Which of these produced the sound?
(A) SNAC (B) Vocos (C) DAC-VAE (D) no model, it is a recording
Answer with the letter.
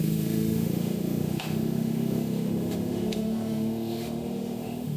C